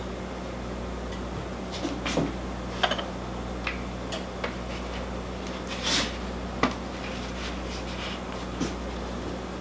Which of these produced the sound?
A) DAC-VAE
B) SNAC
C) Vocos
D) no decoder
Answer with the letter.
D